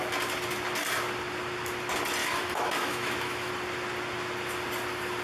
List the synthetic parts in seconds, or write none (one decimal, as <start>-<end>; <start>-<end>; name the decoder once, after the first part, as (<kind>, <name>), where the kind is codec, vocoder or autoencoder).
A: 2.2-3.5 (autoencoder, DAC-VAE)